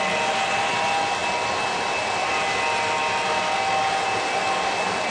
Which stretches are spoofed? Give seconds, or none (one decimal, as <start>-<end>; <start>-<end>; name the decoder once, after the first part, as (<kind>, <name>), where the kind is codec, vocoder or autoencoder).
none